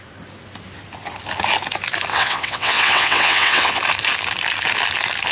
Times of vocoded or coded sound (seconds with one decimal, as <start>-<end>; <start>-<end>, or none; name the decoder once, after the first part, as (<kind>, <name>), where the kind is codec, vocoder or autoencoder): 2.1-3.8 (vocoder, WaveNeXt)